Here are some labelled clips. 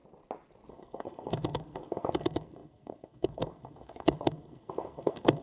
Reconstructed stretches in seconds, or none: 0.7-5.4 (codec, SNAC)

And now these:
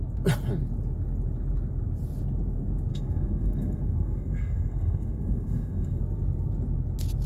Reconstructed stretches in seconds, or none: 2.9-6.0 (codec, SNAC)

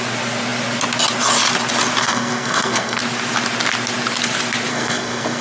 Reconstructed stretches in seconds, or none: 2.0-3.0 (codec, SNAC); 4.7-5.4